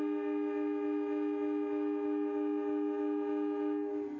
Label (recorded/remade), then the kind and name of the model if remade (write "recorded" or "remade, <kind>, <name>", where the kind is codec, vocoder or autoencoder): recorded